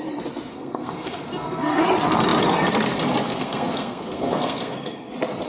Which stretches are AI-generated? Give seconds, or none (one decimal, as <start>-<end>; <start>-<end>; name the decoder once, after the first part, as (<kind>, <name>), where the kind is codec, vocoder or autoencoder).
0.5-1.8 (codec, SNAC); 3.3-5.1